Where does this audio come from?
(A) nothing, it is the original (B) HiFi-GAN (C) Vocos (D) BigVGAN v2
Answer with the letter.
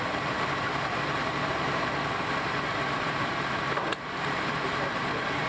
D